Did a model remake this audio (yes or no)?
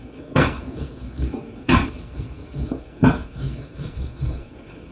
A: yes